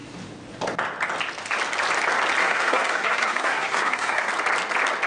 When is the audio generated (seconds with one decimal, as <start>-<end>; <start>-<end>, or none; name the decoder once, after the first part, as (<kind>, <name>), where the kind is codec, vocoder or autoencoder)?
2.4-4.3 (codec, SNAC)